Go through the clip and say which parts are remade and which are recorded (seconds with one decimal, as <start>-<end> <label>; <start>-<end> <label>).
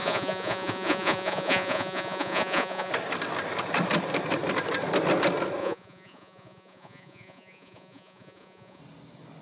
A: 0.0-2.9 remade; 2.9-5.6 recorded; 5.6-8.8 remade; 8.8-9.4 recorded